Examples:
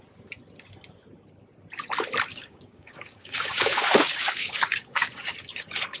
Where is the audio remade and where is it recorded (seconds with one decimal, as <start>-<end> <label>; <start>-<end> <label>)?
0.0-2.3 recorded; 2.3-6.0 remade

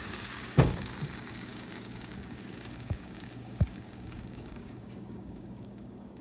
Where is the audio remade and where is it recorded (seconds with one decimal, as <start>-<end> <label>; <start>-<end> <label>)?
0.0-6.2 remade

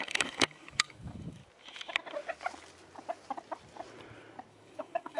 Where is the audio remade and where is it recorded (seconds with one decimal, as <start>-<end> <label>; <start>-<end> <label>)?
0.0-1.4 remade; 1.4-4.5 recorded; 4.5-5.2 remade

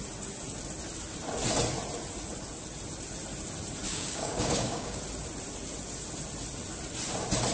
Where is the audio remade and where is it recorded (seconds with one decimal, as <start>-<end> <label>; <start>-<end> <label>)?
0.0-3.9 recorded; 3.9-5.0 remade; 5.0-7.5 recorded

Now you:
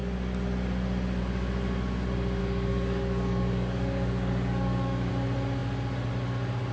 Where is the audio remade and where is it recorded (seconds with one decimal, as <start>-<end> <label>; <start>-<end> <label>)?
0.0-2.4 recorded; 2.4-5.1 remade; 5.1-6.7 recorded

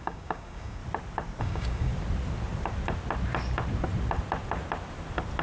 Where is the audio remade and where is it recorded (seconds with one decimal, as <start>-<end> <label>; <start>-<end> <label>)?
0.0-0.8 remade; 0.8-1.4 recorded; 1.4-1.9 remade; 1.9-5.4 recorded

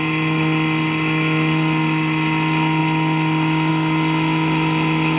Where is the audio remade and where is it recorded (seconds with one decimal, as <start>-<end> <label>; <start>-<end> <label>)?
0.0-5.2 recorded

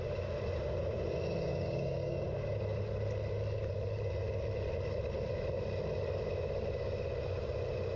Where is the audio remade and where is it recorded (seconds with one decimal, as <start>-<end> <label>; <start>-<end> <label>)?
0.0-1.5 recorded; 1.5-2.2 remade; 2.2-8.0 recorded